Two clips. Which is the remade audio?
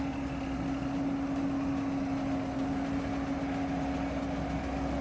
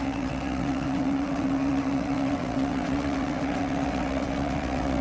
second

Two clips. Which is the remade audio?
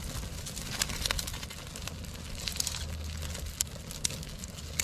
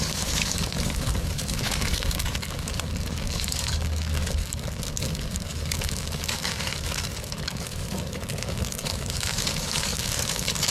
second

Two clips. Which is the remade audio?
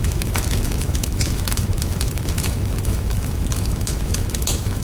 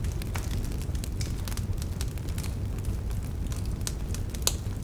first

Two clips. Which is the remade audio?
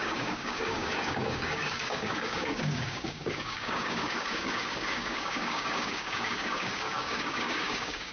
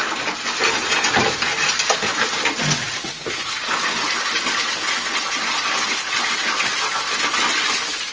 first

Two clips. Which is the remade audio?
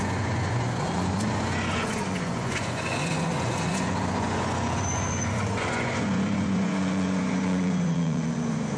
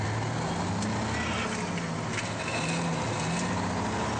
first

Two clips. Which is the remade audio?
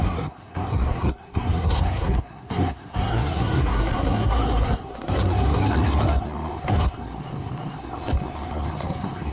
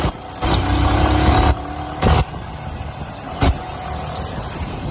first